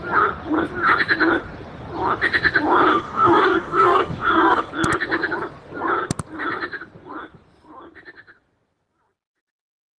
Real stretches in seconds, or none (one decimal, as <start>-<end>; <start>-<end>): 0.0-2.9; 4.7-10.0